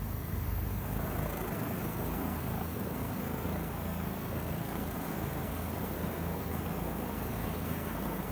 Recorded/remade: remade